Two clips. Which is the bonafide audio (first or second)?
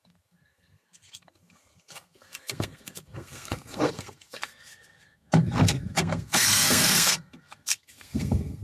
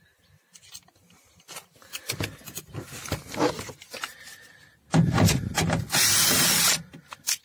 second